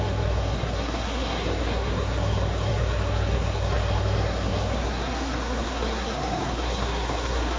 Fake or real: fake